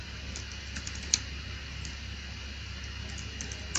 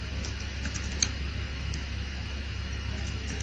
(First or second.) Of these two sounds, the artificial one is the second